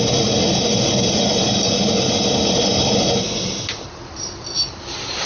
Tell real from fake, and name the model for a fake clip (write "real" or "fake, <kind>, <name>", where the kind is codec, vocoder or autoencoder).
real